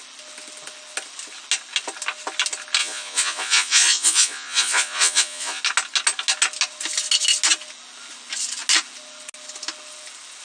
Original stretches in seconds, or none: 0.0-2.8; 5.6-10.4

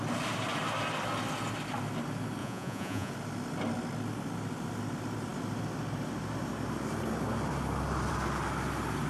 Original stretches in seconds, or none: 0.0-2.4; 3.1-9.1

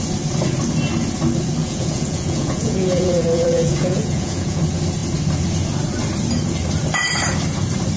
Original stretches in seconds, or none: 0.0-1.6; 4.6-8.0

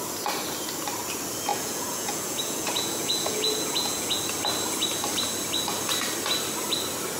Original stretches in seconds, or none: 0.0-1.5; 4.2-7.2

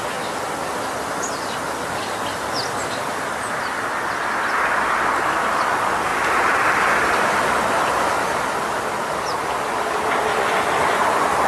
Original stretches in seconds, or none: 0.0-10.3

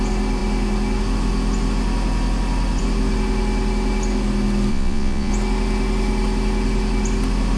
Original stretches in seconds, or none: 0.0-4.7; 5.3-7.6

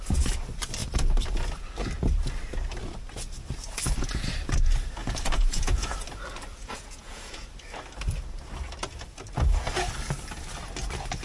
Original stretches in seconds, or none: 0.0-5.0; 5.9-6.5; 7.5-11.2

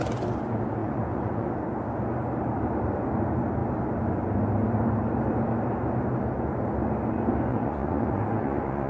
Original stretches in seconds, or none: 0.0-0.8; 1.5-7.5